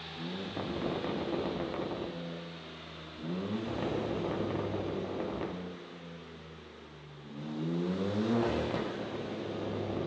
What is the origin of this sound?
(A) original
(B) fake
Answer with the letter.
A